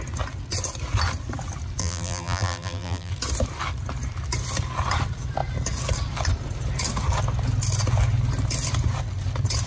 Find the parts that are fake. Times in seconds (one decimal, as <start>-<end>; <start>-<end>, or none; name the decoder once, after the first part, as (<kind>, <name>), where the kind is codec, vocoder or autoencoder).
1.8-3.1 (vocoder, BigVGAN v2)